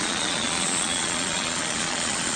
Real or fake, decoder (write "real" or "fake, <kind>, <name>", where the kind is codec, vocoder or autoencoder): fake, vocoder, Vocos